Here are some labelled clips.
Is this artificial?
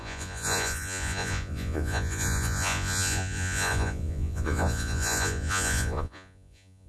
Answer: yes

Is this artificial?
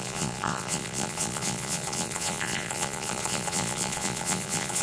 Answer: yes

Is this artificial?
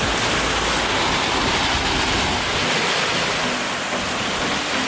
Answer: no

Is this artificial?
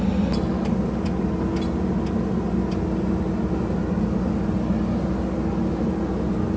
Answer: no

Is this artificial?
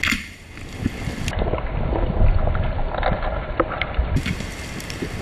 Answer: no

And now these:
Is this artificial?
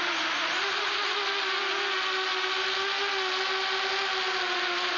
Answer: no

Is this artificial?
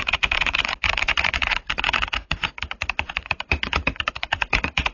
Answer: yes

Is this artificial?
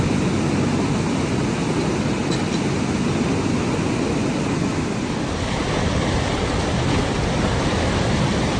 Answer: no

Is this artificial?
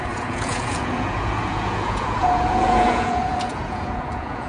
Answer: yes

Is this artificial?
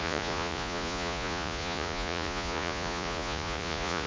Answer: yes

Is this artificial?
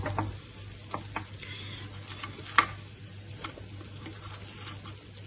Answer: no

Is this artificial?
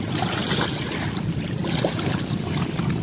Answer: no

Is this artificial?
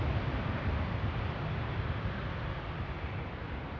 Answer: no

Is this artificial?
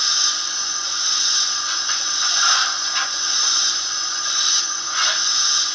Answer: yes